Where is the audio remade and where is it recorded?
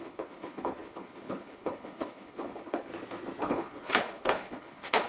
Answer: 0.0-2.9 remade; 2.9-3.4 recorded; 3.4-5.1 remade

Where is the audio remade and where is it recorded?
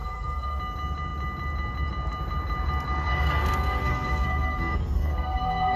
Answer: 0.0-0.6 remade; 0.6-3.1 recorded; 3.1-5.8 remade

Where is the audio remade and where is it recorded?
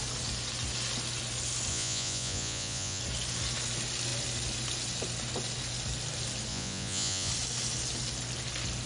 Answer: 0.0-1.7 recorded; 1.7-3.0 remade; 3.0-6.5 recorded; 6.5-7.3 remade; 7.3-8.9 recorded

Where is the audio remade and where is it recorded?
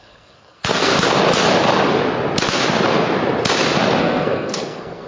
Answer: 0.0-0.9 remade; 0.9-4.0 recorded; 4.0-5.1 remade